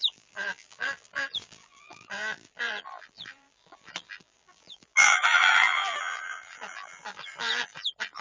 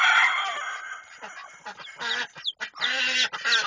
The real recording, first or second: second